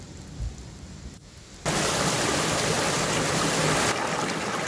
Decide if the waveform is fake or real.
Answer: real